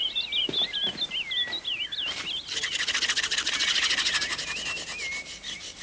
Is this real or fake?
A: real